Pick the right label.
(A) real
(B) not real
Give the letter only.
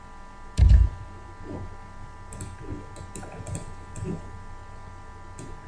A